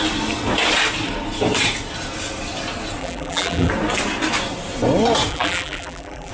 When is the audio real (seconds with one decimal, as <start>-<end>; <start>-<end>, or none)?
0.0-3.0; 3.7-5.3